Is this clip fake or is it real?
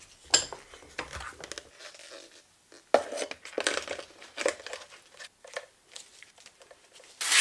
real